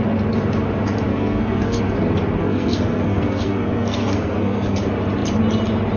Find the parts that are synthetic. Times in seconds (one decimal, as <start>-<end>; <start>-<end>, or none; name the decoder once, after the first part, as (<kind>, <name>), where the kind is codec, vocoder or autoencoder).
1.1-1.8 (codec, SNAC); 2.4-4.8